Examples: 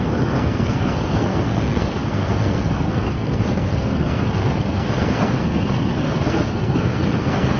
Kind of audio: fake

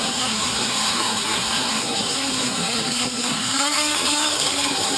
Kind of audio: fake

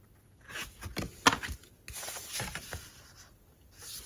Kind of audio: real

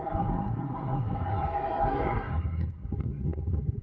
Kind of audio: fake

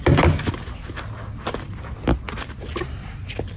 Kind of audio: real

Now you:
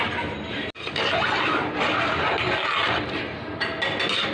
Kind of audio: real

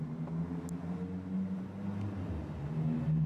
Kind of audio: real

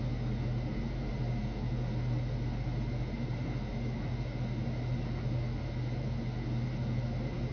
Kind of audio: real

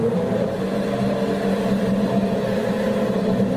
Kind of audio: real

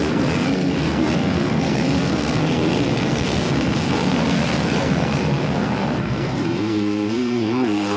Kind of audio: fake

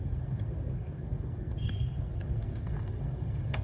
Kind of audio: fake